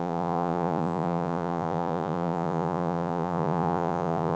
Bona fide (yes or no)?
no